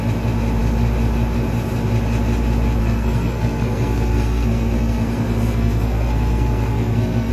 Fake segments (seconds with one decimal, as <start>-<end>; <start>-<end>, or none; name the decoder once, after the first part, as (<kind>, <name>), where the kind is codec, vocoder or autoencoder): 2.8-7.3 (codec, SNAC)